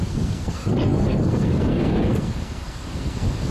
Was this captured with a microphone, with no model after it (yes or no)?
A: no